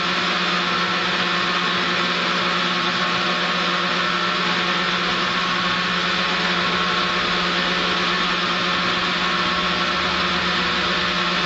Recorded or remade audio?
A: recorded